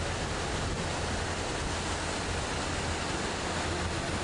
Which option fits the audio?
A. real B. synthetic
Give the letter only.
A